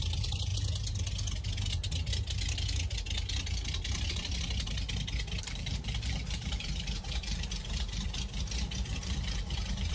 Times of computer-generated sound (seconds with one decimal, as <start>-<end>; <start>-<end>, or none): 0.0-0.5; 5.4-9.9